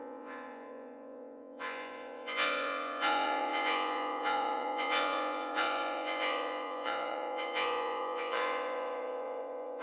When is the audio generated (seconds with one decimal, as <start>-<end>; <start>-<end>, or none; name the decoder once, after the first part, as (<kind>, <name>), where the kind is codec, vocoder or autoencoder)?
0.0-9.8 (vocoder, Vocos)